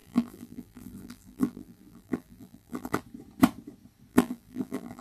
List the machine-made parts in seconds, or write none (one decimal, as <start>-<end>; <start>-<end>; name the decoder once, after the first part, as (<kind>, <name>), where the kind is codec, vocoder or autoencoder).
0.0-3.0 (vocoder, BigVGAN v2); 4.1-5.0

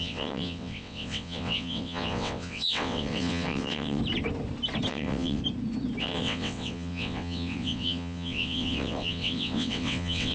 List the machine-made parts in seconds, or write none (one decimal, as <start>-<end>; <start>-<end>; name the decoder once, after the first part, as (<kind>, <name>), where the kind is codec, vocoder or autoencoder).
0.0-4.0 (vocoder, WaveNeXt); 4.9-5.4; 6.0-10.3